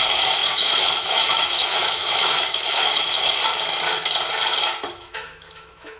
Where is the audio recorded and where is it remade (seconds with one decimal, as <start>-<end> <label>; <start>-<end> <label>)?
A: 0.0-3.4 remade; 3.4-4.9 recorded; 4.9-6.0 remade